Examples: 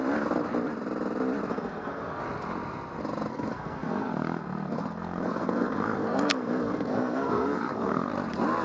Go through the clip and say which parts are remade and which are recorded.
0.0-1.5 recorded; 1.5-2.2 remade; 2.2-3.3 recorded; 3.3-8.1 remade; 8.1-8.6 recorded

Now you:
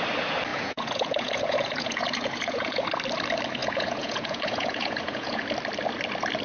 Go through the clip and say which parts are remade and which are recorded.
0.0-0.5 recorded; 0.5-2.8 remade; 2.8-3.6 recorded; 3.6-5.4 remade; 5.4-6.4 recorded

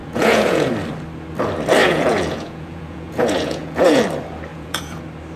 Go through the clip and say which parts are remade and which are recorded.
0.0-0.7 remade; 0.7-1.8 recorded; 1.8-4.0 remade; 4.0-4.5 recorded; 4.5-5.0 remade; 5.0-5.4 recorded

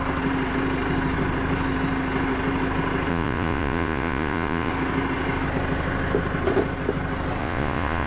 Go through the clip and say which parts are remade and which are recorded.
0.0-3.1 recorded; 3.1-4.7 remade; 4.7-7.4 recorded; 7.4-8.1 remade

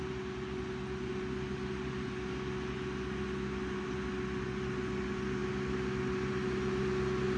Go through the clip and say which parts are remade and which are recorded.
0.0-7.4 recorded

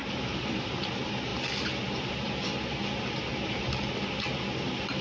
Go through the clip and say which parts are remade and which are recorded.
0.0-0.9 remade; 0.9-5.0 recorded

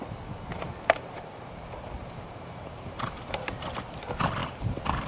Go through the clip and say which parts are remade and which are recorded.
0.0-0.5 recorded; 0.5-3.6 remade; 3.6-4.4 recorded; 4.4-5.1 remade